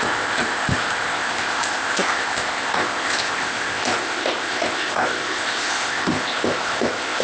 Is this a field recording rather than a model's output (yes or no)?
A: no